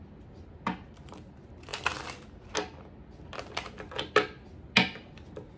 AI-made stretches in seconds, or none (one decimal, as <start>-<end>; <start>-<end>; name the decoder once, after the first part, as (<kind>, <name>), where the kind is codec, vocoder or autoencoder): none

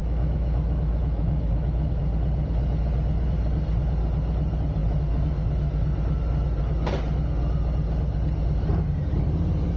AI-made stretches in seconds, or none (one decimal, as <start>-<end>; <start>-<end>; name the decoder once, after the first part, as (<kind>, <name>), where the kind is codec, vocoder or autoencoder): 0.0-2.0 (autoencoder, DAC-VAE)

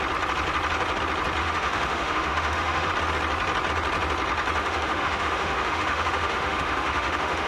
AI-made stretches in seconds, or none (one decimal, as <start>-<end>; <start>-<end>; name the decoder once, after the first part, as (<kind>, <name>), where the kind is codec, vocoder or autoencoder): 1.4-2.9 (autoencoder, DAC-VAE); 4.6-7.5

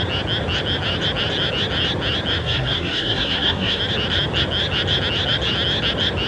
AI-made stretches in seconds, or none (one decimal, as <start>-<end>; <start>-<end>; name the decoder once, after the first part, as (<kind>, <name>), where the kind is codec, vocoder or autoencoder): 2.4-3.8 (codec, SNAC)

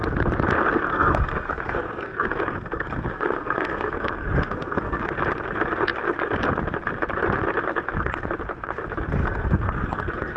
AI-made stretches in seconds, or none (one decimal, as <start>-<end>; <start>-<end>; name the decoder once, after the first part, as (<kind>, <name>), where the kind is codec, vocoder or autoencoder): 0.9-5.0 (codec, SNAC); 9.2-10.4

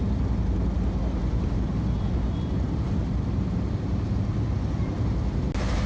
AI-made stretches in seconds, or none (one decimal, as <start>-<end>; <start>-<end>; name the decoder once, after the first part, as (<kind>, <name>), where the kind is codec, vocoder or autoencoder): 1.2-4.2 (vocoder, BigVGAN v2)

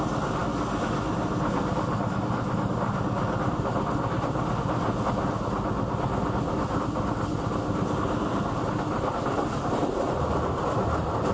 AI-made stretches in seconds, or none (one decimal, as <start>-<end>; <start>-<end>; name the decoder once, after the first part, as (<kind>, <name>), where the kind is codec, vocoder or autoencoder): none